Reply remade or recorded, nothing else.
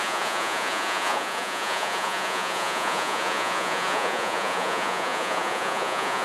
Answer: remade